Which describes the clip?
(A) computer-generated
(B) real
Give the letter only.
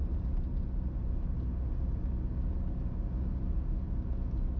B